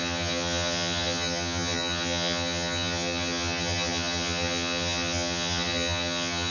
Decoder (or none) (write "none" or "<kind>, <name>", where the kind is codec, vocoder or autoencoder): vocoder, HiFi-GAN